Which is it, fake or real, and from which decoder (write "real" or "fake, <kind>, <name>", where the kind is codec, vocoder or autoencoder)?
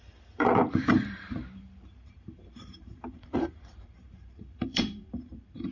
fake, vocoder, BigVGAN v2